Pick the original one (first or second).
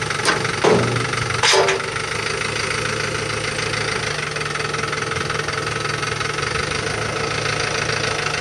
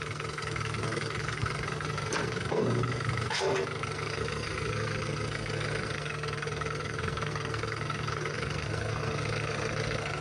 first